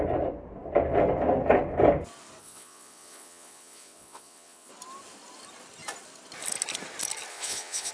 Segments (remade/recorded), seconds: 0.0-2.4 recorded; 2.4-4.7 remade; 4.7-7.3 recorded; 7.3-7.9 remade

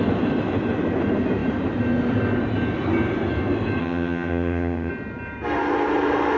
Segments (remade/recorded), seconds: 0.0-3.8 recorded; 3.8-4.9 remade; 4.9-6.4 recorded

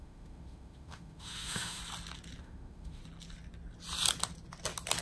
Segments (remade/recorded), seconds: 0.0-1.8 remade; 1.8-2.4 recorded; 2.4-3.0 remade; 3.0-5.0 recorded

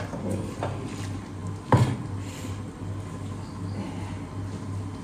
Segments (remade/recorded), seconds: 0.0-5.0 recorded

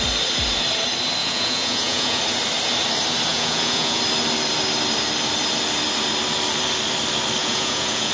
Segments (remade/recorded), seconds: 0.0-1.2 recorded; 1.2-2.2 remade; 2.2-3.3 recorded; 3.3-4.0 remade; 4.0-7.4 recorded; 7.4-8.1 remade

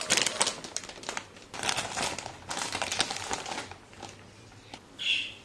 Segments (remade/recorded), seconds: 0.0-5.4 recorded

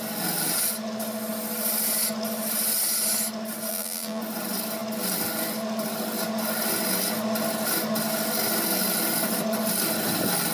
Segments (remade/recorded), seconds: 0.0-3.7 recorded; 3.7-4.2 remade; 4.2-10.5 recorded

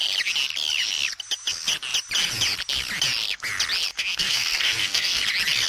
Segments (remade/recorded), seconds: 0.0-3.9 recorded; 3.9-5.2 remade; 5.2-5.7 recorded